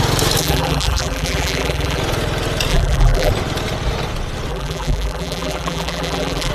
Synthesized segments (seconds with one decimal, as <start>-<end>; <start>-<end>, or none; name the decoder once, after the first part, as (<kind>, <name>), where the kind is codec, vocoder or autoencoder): 0.4-2.0 (vocoder, BigVGAN v2); 2.7-3.3; 4.5-6.5

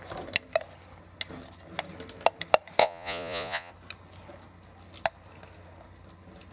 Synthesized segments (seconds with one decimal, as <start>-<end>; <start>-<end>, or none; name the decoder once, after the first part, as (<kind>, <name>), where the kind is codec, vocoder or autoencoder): 2.8-3.7 (vocoder, Vocos)